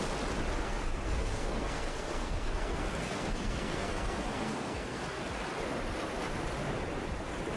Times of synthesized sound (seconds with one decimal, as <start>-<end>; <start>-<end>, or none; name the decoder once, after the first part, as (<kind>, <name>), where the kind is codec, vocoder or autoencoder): 0.6-5.2 (codec, SNAC)